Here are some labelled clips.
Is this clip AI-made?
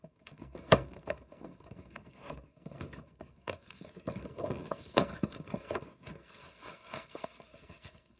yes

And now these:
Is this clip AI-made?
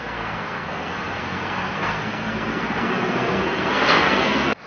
yes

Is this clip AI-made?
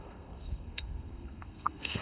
yes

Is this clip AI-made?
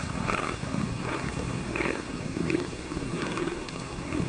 yes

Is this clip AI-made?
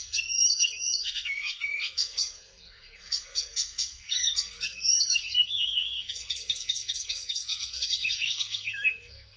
yes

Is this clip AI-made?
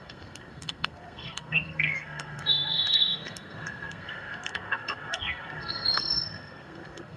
yes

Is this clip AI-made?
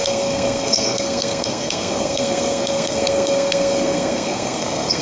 yes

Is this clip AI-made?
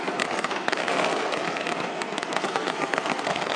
yes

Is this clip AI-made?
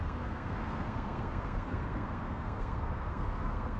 yes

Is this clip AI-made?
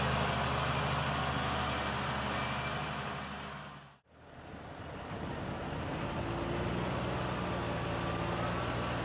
no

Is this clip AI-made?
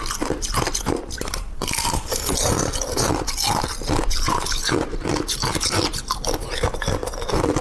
no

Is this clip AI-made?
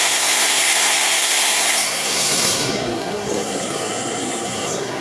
yes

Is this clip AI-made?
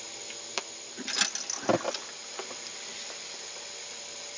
no